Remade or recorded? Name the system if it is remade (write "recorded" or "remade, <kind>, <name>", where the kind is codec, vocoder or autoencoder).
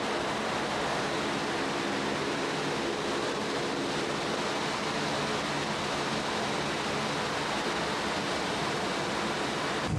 recorded